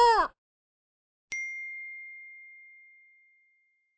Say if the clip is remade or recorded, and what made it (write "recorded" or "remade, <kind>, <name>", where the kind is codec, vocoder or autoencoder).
recorded